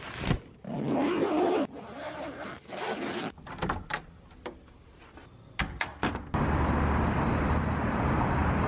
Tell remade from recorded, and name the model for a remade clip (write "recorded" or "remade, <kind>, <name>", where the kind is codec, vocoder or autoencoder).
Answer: recorded